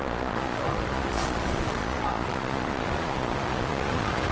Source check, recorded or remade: remade